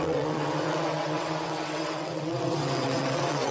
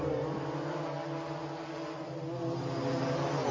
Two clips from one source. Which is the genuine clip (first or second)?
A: second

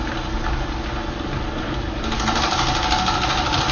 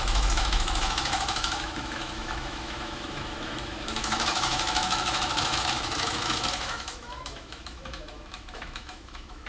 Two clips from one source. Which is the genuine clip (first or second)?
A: first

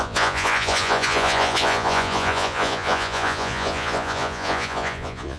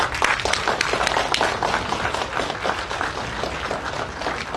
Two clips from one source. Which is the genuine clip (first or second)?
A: second